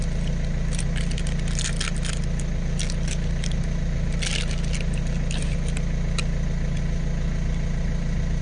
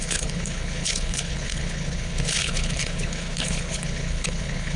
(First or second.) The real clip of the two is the first